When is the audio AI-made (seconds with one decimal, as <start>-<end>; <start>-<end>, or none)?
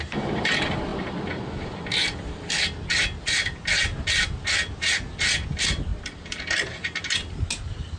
none